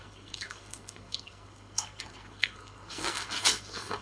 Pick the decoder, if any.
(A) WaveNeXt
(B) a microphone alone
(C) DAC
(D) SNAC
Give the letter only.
D